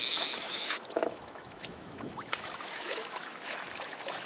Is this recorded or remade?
remade